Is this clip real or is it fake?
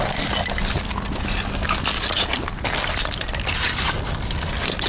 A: real